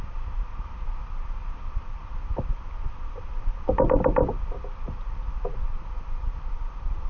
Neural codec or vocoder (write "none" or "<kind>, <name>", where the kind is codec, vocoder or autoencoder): vocoder, BigVGAN v2